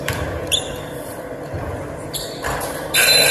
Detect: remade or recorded remade